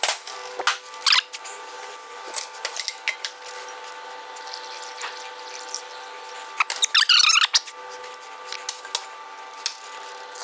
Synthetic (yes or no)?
no